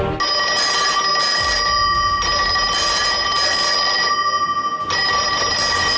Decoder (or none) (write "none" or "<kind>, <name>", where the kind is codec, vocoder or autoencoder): none